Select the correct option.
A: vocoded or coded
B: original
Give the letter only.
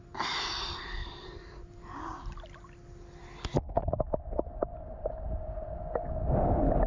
B